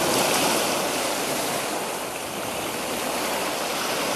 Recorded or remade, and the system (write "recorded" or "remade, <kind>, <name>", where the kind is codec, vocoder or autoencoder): recorded